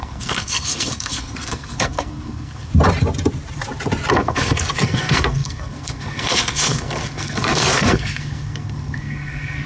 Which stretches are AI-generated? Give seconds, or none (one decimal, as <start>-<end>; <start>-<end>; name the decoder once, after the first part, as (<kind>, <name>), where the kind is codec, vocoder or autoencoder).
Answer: 0.0-2.7 (codec, SNAC); 4.1-9.7